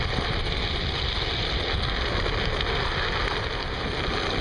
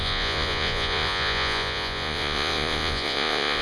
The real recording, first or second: first